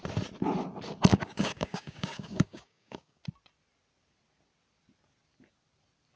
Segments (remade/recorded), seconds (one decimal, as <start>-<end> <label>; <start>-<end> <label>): 0.0-1.1 recorded; 1.1-3.2 remade; 3.2-6.2 recorded